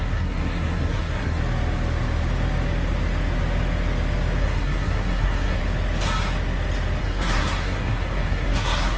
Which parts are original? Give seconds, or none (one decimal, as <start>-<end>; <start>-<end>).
1.4-4.4; 5.6-7.0